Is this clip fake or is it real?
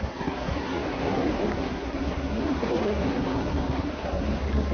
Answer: fake